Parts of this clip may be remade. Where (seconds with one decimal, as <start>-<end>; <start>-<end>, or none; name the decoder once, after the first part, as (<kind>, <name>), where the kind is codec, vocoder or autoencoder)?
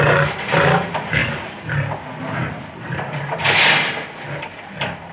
none